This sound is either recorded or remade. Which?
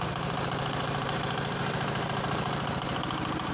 remade